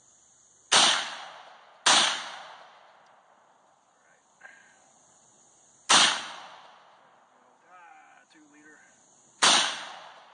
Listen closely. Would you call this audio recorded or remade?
recorded